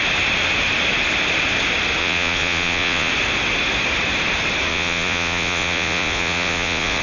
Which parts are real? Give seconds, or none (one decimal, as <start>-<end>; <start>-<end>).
0.0-2.0; 3.1-4.7

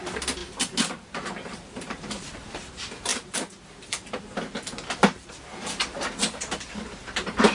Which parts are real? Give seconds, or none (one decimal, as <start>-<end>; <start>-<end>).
0.0-0.4; 2.7-7.5

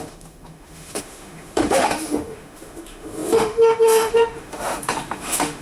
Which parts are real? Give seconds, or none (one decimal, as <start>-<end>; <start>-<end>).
none

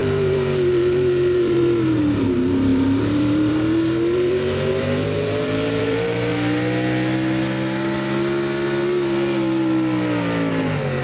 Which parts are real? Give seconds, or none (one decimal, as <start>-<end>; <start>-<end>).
6.3-10.5

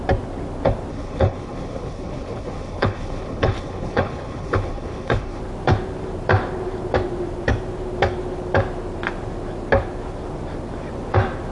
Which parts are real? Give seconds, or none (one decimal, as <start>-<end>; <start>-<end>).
0.0-0.9; 5.4-11.5

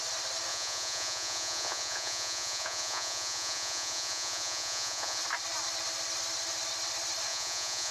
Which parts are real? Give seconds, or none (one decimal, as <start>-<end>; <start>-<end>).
0.0-0.5; 5.2-7.3

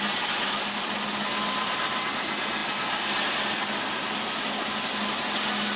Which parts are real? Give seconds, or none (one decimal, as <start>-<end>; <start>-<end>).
0.0-5.8

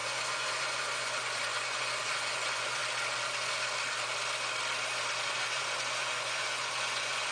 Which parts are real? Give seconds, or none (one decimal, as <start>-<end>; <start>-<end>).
2.8-5.3